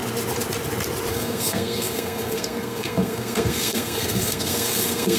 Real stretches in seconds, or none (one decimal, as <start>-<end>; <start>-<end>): 0.0-1.1